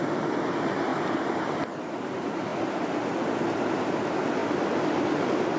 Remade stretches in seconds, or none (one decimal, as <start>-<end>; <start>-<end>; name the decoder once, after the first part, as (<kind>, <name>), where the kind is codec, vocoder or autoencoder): none

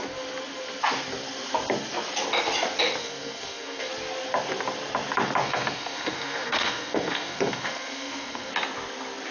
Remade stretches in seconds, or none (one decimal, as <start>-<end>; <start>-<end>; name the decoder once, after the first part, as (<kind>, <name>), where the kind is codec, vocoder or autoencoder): 3.0-3.9 (codec, SNAC); 5.4-8.5

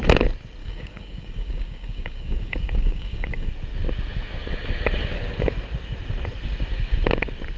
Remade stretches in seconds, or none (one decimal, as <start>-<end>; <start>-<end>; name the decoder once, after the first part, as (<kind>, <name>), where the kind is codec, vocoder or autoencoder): 0.6-3.5 (codec, DAC)

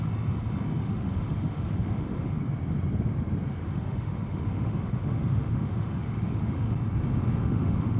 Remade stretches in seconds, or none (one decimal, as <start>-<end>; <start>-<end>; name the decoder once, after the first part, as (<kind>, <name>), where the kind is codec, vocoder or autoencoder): 0.8-2.4 (autoencoder, DAC-VAE); 3.6-6.7; 7.4-8.0

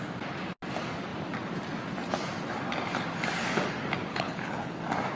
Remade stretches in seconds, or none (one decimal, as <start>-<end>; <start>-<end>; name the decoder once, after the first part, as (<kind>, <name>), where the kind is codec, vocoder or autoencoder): 4.1-4.8 (codec, HILCodec)

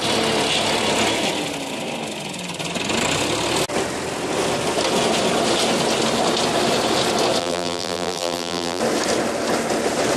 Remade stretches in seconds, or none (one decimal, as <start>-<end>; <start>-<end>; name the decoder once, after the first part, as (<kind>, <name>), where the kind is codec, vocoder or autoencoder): 7.4-8.8 (vocoder, BigVGAN v2)